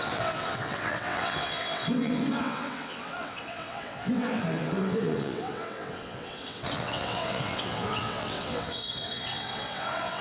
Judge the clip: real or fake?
fake